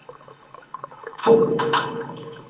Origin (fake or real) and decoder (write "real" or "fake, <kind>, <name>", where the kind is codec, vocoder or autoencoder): fake, codec, HILCodec